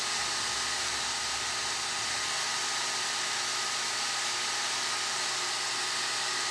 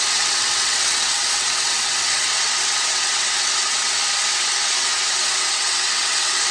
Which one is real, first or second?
first